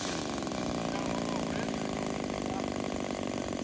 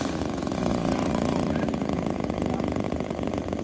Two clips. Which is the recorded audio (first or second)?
first